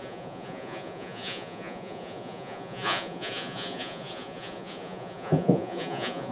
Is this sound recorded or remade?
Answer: remade